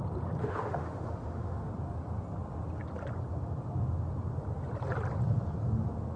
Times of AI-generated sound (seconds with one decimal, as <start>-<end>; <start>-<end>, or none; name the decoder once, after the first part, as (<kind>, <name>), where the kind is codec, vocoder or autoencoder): 0.4-1.7 (autoencoder, DAC-VAE)